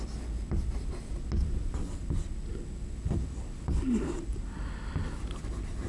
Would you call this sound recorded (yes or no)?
yes